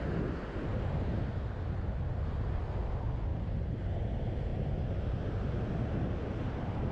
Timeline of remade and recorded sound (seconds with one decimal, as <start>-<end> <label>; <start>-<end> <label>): 0.0-3.3 recorded; 3.3-3.9 remade; 3.9-6.9 recorded